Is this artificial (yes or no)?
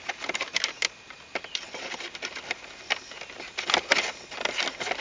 no